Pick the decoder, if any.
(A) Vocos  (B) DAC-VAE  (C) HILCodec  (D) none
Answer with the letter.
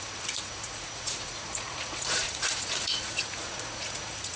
A